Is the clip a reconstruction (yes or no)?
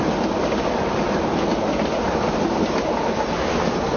no